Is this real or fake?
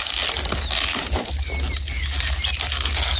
real